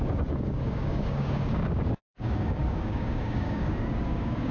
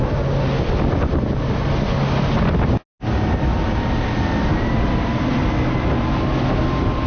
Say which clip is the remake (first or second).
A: first